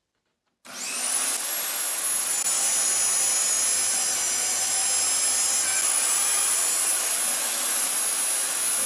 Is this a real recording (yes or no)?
yes